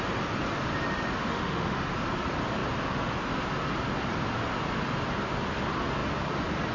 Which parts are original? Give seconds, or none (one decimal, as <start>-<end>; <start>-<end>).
0.0-1.2; 1.9-6.7